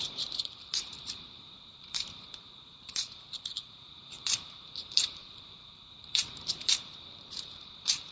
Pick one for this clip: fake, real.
fake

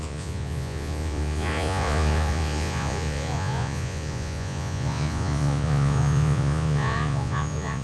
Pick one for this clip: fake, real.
fake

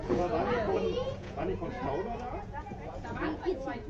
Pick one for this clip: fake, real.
fake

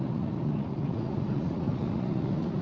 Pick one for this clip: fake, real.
fake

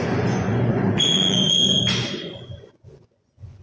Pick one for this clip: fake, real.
fake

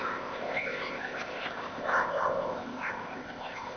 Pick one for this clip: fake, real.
fake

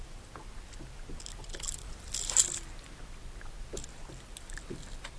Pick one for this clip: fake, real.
real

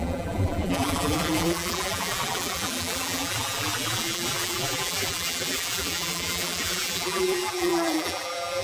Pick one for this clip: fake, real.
fake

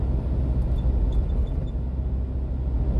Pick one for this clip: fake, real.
real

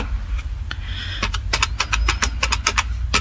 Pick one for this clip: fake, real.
real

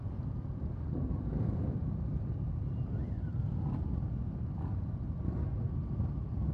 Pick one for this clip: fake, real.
real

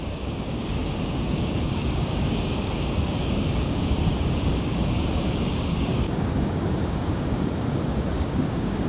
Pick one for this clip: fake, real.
fake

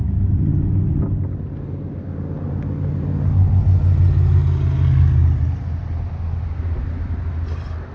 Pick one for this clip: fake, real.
real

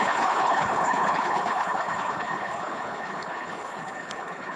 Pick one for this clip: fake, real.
fake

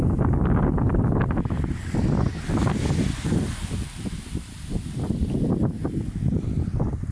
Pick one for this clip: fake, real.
real